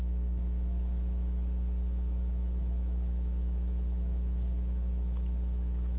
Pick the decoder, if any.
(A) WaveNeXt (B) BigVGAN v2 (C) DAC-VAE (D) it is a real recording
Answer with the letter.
C